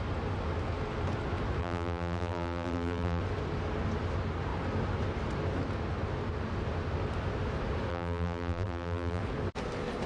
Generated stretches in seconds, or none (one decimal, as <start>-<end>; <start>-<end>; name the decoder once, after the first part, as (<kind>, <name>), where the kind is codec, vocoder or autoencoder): 1.6-3.2 (vocoder, BigVGAN v2); 7.9-9.2